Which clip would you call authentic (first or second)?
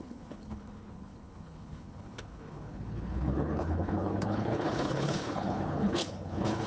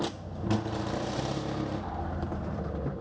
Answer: second